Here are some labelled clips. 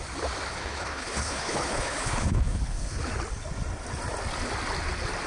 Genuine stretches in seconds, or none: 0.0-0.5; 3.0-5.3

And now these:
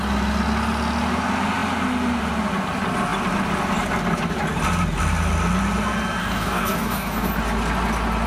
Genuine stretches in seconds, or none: 0.0-6.2; 7.3-8.3

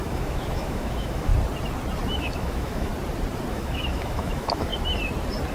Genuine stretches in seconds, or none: 1.3-2.2; 2.9-3.5; 4.7-5.5

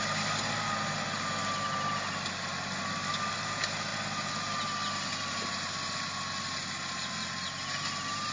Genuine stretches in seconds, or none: 0.0-8.3